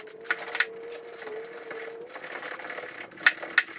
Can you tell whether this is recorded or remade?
recorded